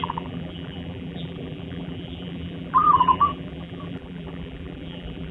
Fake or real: fake